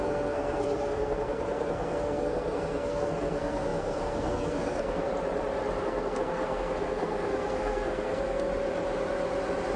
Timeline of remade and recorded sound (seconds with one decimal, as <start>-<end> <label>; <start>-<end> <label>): 0.0-5.1 remade; 5.1-5.8 recorded; 5.8-8.5 remade; 8.5-9.8 recorded